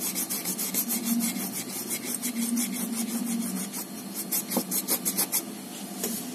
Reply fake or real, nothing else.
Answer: real